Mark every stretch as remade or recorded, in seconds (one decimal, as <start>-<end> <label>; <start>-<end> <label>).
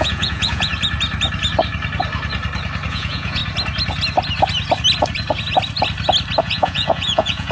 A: 0.0-0.7 remade; 0.7-2.9 recorded; 2.9-3.4 remade; 3.4-6.4 recorded; 6.4-7.5 remade